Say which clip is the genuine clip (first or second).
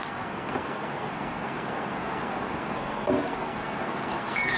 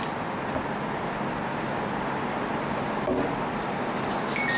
second